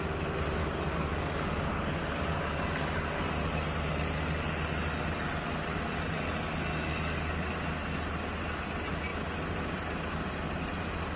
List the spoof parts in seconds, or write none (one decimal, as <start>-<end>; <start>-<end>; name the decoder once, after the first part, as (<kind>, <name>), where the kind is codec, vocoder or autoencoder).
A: 0.6-3.2 (codec, DAC)